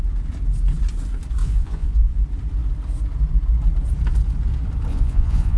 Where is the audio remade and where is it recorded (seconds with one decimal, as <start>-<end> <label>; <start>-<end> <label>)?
0.0-1.4 recorded; 1.4-2.2 remade; 2.2-4.9 recorded; 4.9-5.6 remade